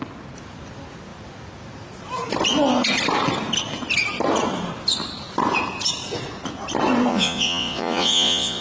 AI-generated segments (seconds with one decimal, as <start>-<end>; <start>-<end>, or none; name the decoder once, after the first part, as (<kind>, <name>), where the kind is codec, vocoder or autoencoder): 7.1-8.6 (vocoder, Vocos)